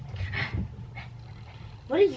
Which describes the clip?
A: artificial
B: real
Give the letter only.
B